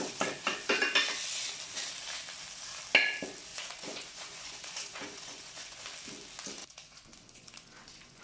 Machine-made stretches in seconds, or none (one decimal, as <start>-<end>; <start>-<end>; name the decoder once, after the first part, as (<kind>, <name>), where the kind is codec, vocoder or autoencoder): 3.5-5.8 (vocoder, Vocos); 6.6-8.2